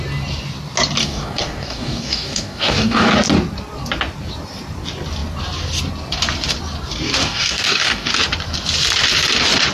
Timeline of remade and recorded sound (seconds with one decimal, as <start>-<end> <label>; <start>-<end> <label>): 0.0-1.0 recorded; 1.0-3.1 remade; 3.1-7.2 recorded; 7.2-8.1 remade; 8.1-9.7 recorded